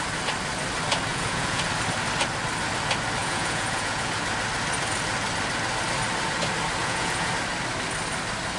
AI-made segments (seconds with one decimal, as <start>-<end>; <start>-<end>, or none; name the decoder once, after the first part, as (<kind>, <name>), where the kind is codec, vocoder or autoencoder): 1.1-1.6 (vocoder, Vocos); 3.2-4.1; 6.8-7.3

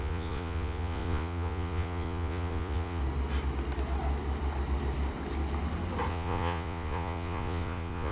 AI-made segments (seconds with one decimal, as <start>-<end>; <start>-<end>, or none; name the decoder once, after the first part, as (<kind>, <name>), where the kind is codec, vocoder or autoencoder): 0.0-3.0 (vocoder, Vocos); 6.1-8.1

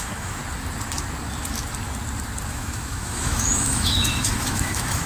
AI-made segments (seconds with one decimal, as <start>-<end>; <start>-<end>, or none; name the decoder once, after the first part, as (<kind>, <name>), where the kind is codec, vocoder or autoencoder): 0.0-0.4 (autoencoder, DAC-VAE); 2.5-5.1